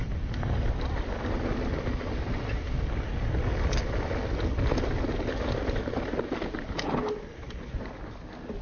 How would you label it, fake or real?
real